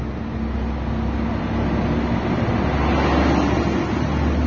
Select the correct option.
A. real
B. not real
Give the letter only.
A